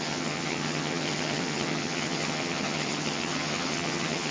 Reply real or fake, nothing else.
fake